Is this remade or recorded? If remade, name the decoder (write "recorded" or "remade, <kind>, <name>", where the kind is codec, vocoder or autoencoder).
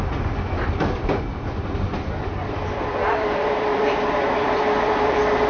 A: remade, vocoder, BigVGAN v2